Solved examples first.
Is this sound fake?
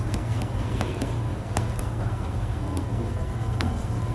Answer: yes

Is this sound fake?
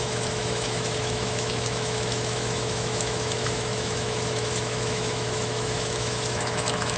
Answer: yes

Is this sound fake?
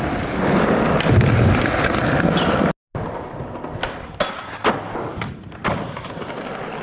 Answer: no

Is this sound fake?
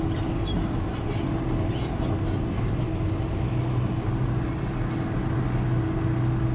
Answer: no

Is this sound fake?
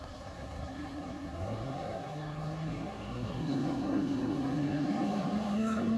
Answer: yes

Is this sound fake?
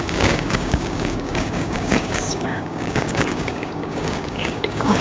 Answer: yes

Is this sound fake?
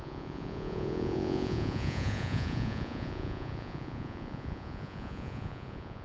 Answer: yes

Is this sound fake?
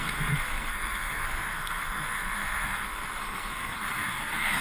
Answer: yes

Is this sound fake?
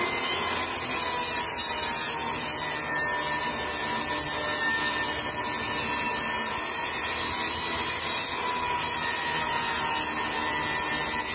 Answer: no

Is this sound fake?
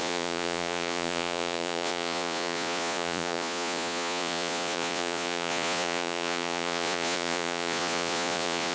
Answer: yes